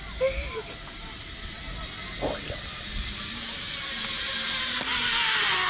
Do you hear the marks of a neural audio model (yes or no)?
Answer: no